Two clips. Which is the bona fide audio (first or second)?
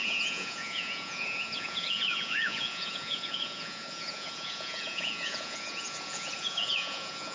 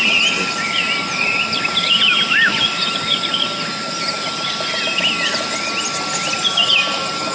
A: second